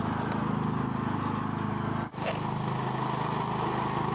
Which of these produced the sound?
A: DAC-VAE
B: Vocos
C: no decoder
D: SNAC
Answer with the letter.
C